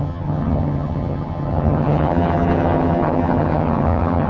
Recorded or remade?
remade